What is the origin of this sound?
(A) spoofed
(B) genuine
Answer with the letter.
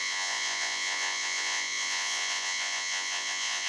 A